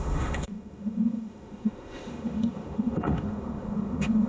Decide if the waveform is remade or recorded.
remade